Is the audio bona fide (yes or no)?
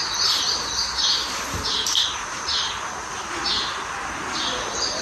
yes